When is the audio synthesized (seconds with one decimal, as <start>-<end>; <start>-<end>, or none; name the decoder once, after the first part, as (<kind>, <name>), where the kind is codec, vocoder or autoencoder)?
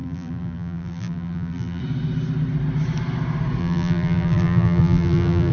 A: 0.0-1.8 (vocoder, BigVGAN v2); 3.6-5.5